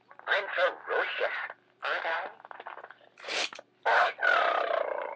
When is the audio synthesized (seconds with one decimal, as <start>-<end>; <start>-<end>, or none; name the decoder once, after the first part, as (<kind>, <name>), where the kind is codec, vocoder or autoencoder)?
none